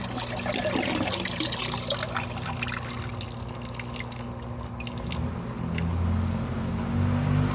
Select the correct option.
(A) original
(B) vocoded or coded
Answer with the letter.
A